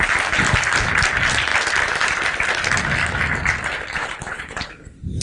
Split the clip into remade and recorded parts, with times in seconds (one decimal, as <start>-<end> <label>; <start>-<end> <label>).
0.0-4.0 recorded; 4.0-4.7 remade; 4.7-5.2 recorded